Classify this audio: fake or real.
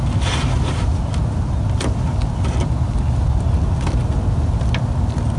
real